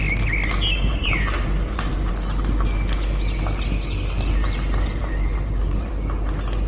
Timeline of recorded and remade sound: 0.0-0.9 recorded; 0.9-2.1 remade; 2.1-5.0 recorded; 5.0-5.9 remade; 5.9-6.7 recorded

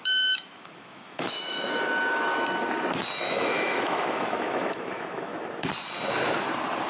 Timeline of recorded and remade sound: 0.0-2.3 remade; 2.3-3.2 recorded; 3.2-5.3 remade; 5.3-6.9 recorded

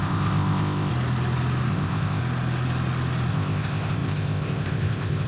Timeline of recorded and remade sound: 0.0-0.9 remade; 0.9-1.7 recorded; 1.7-2.2 remade; 2.2-3.3 recorded; 3.3-5.3 remade

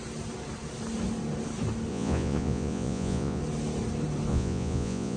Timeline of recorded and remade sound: 0.0-1.9 recorded; 1.9-3.4 remade; 3.4-4.3 recorded; 4.3-5.2 remade

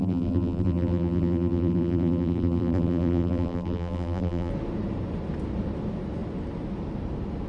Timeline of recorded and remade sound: 0.0-4.5 remade; 4.5-7.5 recorded